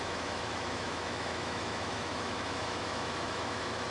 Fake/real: fake